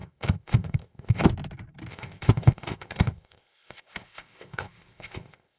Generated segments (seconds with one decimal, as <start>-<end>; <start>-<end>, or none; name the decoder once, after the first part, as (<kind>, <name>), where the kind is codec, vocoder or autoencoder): 0.0-1.3 (codec, ZipCodec); 1.9-5.6